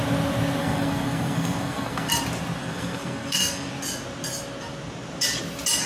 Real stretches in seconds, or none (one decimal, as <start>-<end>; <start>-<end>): 0.0-0.6; 2.1-2.6; 3.7-5.9